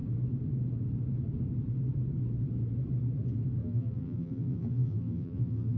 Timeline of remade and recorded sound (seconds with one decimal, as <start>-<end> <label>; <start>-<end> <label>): 0.0-3.6 recorded; 3.6-5.8 remade